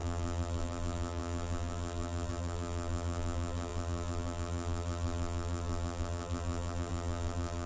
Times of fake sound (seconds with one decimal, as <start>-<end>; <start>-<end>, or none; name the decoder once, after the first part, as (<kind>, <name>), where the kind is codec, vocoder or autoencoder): 0.0-7.7 (vocoder, BigVGAN v2)